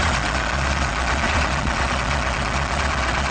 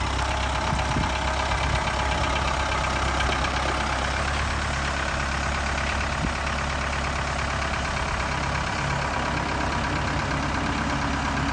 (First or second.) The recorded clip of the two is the second